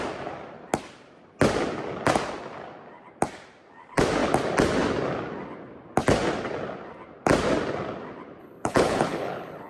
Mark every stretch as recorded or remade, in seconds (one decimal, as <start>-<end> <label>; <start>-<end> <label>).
0.0-8.4 recorded; 8.4-9.7 remade